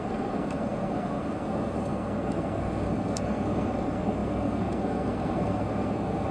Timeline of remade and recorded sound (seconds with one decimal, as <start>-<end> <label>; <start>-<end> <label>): 0.0-6.3 remade